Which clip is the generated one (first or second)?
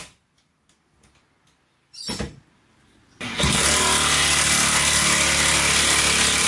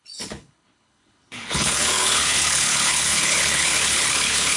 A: second